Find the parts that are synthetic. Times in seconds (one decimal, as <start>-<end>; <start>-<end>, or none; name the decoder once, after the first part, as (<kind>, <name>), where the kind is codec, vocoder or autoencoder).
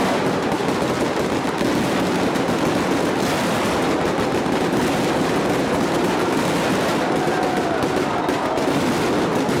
none